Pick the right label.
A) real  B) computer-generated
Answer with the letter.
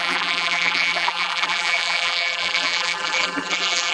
B